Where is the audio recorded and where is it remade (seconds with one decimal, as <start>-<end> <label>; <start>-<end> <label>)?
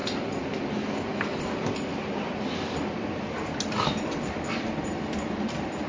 0.0-5.9 recorded